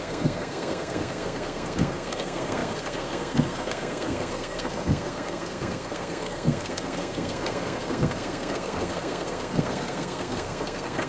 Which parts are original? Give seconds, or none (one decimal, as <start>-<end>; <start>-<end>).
none